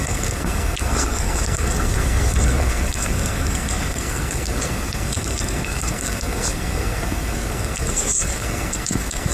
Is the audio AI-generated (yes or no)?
yes